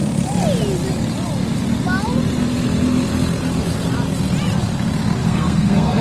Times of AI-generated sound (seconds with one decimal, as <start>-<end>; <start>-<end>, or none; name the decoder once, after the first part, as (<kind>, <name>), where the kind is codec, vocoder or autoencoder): 5.2-6.0 (codec, SNAC)